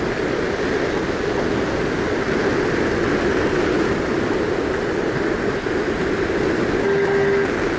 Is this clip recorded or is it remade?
recorded